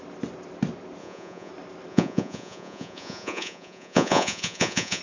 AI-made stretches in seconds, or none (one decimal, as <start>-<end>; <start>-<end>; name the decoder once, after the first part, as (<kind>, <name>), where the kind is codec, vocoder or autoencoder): 1.0-1.5 (vocoder, Vocos); 1.9-5.0